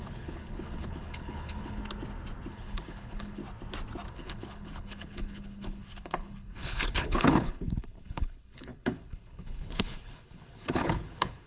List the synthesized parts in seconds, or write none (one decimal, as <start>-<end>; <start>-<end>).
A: 0.0-1.8; 2.5-3.4; 4.1-11.5